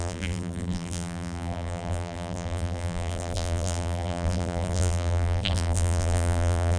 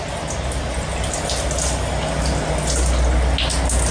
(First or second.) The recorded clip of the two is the second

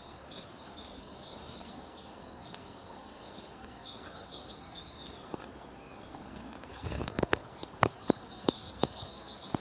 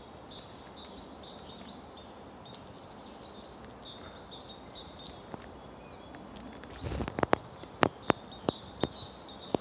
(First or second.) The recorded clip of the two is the second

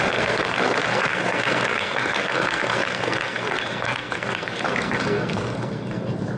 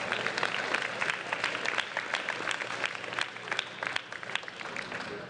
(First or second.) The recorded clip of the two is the second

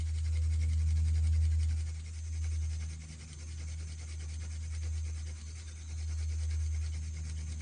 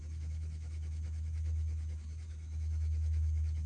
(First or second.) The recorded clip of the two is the first